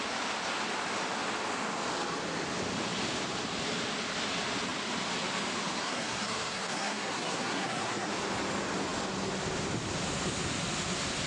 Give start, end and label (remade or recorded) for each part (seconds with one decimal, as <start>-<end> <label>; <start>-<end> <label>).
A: 0.0-5.8 recorded; 5.8-8.1 remade; 8.1-11.3 recorded